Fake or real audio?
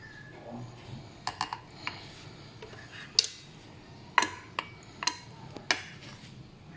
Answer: real